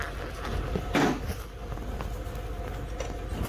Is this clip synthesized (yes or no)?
no